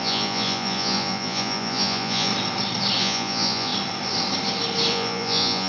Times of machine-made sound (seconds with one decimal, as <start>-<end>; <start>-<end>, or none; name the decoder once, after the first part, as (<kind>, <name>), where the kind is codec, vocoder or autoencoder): 0.0-2.3 (vocoder, Vocos); 3.0-3.7; 4.9-5.7